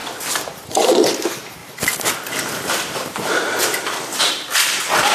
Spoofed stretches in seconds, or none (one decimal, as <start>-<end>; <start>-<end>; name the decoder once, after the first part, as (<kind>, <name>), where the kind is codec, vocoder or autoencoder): 0.0-0.5 (vocoder, BigVGAN v2); 1.6-5.1